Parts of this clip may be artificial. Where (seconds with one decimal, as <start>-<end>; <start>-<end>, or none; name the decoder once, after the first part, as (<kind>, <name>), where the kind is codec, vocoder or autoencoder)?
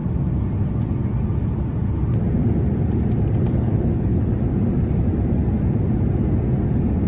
3.4-4.3 (codec, HILCodec)